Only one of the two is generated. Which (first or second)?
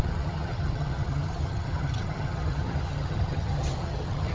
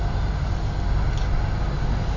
first